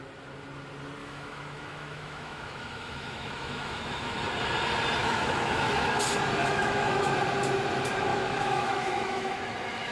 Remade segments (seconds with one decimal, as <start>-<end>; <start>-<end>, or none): 1.0-4.2; 5.0-6.0; 6.4-7.1; 8.1-9.4